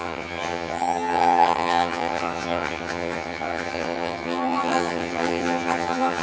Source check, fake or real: fake